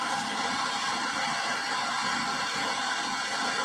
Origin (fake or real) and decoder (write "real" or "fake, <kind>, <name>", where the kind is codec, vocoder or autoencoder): real